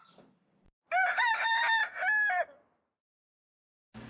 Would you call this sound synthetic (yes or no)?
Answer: no